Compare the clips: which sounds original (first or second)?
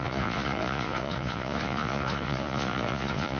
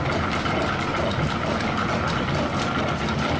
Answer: second